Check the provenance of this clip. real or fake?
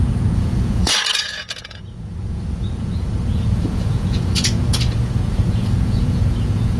fake